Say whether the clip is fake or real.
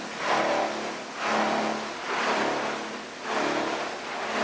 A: real